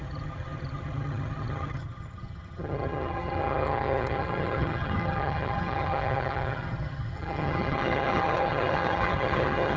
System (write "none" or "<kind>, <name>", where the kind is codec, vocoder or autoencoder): vocoder, HiFi-GAN